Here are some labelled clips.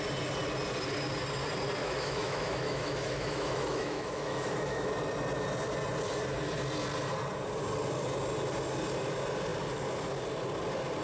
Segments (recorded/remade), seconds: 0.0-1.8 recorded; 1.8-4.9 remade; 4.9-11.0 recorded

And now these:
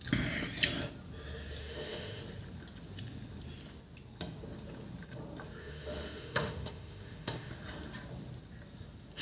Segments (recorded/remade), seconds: 0.0-1.6 recorded; 1.6-2.2 remade; 2.2-5.6 recorded; 5.6-7.5 remade; 7.5-9.2 recorded

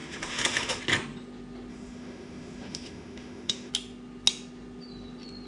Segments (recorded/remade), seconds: 0.0-0.8 remade; 0.8-1.7 recorded; 1.7-3.7 remade; 3.7-5.5 recorded

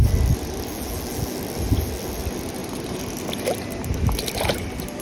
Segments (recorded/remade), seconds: 0.0-5.0 recorded

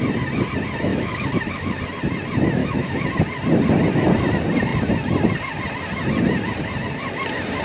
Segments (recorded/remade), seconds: 0.0-0.9 recorded; 0.9-1.8 remade; 1.8-2.6 recorded; 2.6-3.1 remade; 3.1-7.6 recorded